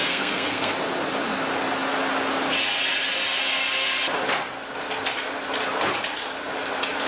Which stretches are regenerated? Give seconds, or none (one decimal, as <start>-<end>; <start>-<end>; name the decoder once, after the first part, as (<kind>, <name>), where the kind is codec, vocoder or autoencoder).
0.0-0.7 (codec, SNAC)